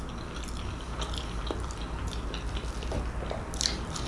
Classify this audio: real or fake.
real